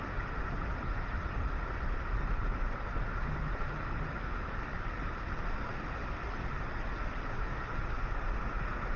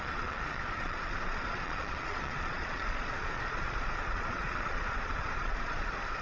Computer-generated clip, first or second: second